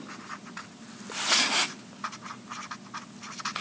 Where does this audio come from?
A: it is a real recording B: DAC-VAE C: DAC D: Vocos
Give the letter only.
A